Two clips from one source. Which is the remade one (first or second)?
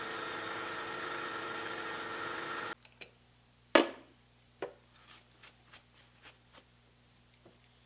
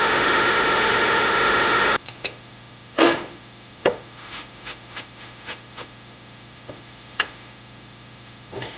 second